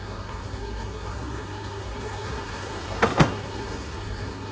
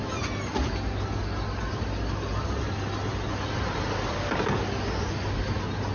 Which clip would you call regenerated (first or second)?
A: first